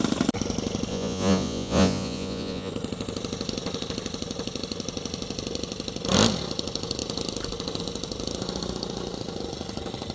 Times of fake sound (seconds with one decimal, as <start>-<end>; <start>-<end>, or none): 0.9-2.7